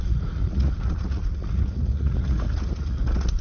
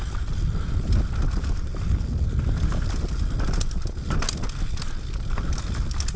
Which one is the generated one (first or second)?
first